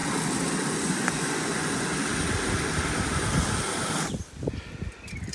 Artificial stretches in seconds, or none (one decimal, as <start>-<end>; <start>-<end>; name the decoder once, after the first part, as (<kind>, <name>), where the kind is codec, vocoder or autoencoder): 0.7-1.9 (vocoder, Vocos)